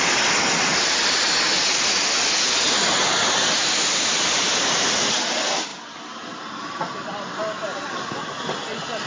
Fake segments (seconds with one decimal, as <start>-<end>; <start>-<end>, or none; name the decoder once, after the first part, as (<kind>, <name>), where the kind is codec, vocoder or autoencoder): none

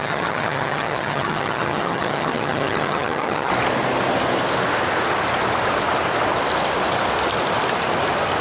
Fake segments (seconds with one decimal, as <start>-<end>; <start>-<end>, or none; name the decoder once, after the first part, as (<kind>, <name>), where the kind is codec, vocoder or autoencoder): 0.0-3.5 (vocoder, HiFi-GAN)

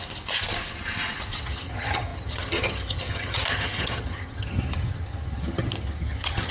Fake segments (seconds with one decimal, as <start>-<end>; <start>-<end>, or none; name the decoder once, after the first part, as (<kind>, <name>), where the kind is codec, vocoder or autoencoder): 1.4-6.5 (vocoder, HiFi-GAN)

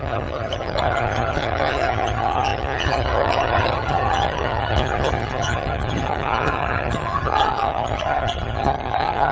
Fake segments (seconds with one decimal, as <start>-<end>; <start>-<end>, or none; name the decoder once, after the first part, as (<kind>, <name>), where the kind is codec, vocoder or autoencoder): 0.0-9.3 (vocoder, HiFi-GAN)

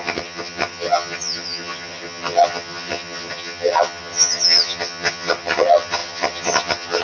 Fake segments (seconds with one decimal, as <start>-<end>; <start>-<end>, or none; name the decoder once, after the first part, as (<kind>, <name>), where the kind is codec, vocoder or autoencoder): 0.0-7.0 (vocoder, HiFi-GAN)

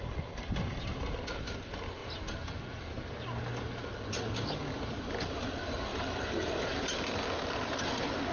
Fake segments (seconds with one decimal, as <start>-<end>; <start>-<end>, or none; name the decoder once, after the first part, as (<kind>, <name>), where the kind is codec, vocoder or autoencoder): none

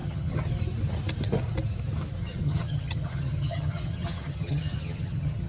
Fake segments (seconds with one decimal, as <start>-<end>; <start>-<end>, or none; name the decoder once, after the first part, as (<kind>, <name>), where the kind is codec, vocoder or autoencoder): 0.0-0.5 (vocoder, HiFi-GAN); 2.2-5.5

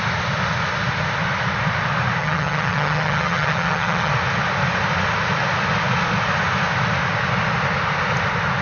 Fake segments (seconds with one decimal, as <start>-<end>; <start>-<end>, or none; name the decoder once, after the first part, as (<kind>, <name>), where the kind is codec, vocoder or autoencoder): 2.2-4.1 (vocoder, HiFi-GAN)